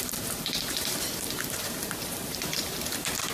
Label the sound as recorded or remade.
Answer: remade